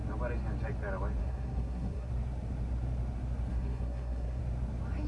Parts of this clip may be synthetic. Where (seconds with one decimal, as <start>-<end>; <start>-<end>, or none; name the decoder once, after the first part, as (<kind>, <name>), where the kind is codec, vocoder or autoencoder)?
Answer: 1.2-2.1 (codec, SNAC); 3.5-4.4